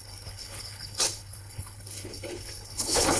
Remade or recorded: remade